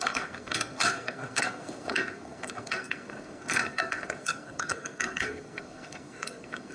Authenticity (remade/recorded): remade